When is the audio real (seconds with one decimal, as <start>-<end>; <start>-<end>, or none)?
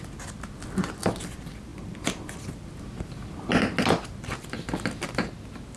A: 0.0-5.8